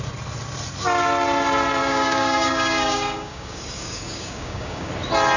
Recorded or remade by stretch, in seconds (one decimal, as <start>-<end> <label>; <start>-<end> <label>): 0.0-1.8 recorded; 1.8-4.9 remade; 4.9-5.4 recorded